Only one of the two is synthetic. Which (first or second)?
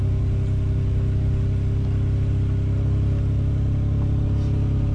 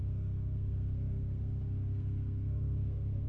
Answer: second